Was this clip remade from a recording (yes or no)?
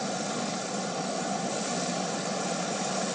yes